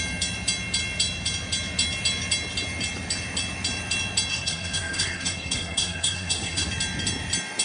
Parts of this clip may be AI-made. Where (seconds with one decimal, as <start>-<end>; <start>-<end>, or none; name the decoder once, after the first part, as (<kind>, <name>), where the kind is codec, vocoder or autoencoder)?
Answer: 4.3-6.7 (codec, SNAC)